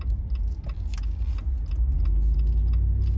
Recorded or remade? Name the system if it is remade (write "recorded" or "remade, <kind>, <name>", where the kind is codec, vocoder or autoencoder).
recorded